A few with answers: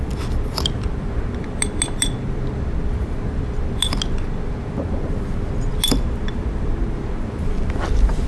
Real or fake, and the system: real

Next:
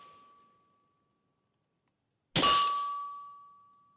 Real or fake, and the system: real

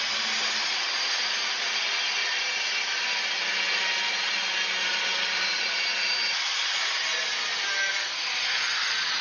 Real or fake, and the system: real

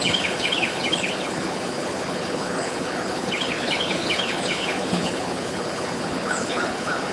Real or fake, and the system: fake, codec, HILCodec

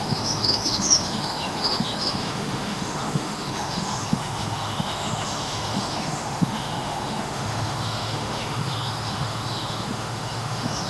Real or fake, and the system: fake, autoencoder, DAC-VAE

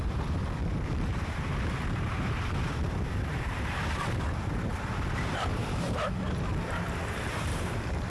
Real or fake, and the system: fake, vocoder, BigVGAN v2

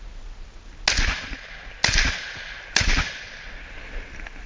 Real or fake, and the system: real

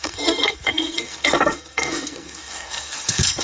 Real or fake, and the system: fake, codec, SNAC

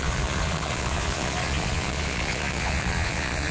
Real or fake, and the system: fake, vocoder, Vocos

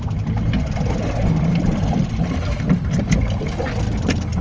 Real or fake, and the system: real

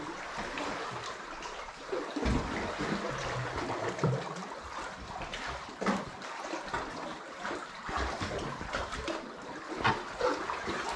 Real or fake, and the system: real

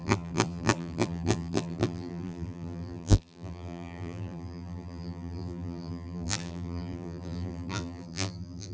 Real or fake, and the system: fake, vocoder, BigVGAN v2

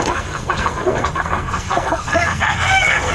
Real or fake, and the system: fake, codec, SNAC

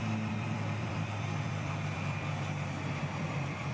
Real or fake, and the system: fake, vocoder, BigVGAN v2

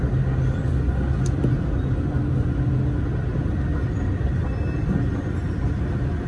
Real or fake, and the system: real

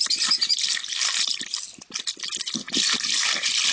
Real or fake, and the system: real